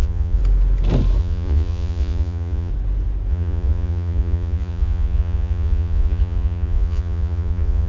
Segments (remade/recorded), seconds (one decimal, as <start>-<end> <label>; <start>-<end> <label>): 0.0-0.4 remade; 0.4-1.2 recorded; 1.2-2.7 remade; 2.7-3.3 recorded; 3.3-7.9 remade